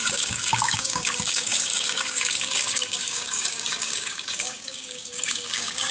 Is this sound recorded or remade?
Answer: remade